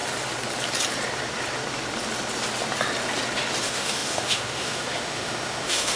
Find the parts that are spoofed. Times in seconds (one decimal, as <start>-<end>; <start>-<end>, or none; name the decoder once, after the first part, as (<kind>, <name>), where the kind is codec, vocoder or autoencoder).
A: 3.6-6.0 (autoencoder, DAC-VAE)